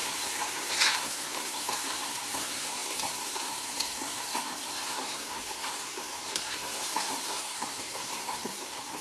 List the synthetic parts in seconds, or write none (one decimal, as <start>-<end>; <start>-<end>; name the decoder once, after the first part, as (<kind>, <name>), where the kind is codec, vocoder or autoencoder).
0.0-9.0 (codec, SNAC)